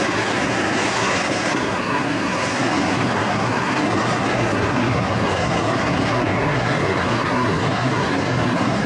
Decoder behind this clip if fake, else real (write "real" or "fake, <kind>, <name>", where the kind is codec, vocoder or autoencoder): fake, codec, SNAC